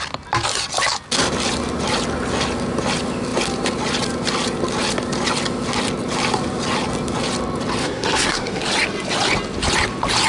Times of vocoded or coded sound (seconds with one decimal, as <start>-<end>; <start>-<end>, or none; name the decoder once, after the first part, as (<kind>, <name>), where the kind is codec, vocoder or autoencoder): 7.8-8.6 (codec, SNAC)